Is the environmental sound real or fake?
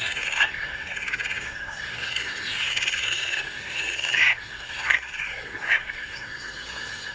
fake